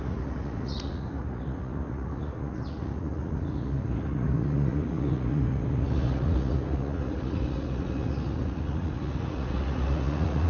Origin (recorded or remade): remade